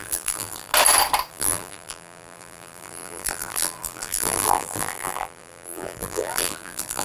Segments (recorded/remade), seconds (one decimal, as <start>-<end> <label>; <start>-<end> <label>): 0.0-0.7 remade; 0.7-1.3 recorded; 1.3-7.0 remade